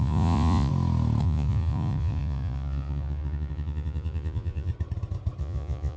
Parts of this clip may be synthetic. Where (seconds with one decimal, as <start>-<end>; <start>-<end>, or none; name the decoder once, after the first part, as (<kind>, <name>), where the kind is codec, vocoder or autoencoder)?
0.0-0.7 (vocoder, Vocos); 1.2-4.7; 5.4-6.0